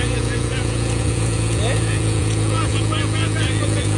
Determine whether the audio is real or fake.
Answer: fake